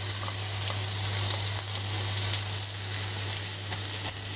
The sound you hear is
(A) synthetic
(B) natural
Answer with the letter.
B